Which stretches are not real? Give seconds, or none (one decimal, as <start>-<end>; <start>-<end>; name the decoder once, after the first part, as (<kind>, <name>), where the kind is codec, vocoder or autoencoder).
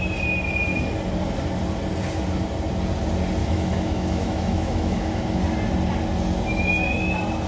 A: 3.4-5.4 (autoencoder, DAC-VAE)